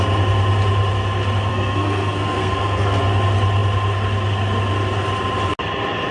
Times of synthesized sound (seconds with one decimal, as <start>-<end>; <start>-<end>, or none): 1.5-3.0